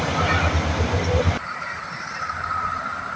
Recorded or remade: remade